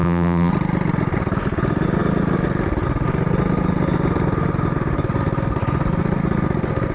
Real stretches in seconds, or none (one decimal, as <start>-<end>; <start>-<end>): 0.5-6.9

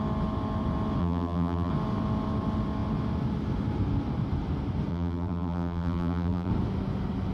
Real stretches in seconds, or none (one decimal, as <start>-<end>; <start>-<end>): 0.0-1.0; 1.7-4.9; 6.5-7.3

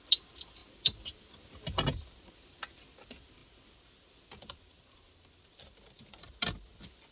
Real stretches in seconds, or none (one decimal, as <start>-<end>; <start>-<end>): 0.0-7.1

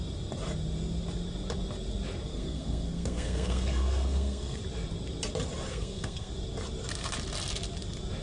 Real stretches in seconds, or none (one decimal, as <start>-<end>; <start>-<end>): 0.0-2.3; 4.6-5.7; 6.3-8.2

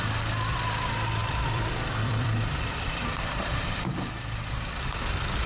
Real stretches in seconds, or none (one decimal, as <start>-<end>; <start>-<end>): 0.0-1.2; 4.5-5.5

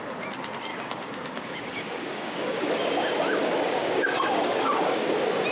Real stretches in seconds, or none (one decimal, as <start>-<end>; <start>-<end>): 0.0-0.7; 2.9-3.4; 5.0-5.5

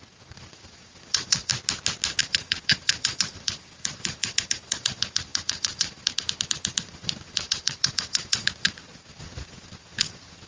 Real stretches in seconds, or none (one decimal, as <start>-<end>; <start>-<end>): 1.5-2.2